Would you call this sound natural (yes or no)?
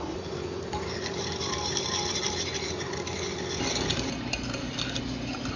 yes